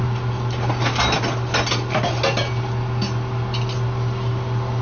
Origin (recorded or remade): recorded